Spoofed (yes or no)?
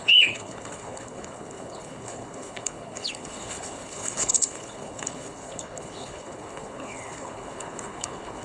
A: yes